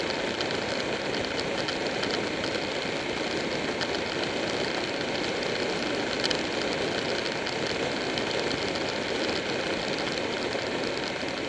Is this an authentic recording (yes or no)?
yes